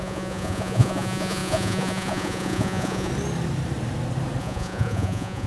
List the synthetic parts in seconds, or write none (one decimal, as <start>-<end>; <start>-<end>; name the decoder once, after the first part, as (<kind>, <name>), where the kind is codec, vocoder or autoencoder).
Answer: 0.0-3.1 (vocoder, Vocos); 4.4-5.5